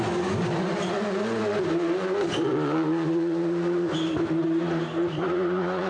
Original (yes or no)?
yes